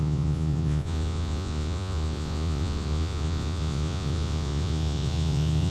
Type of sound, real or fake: fake